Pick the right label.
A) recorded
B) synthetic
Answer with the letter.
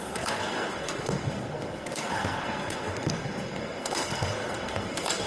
B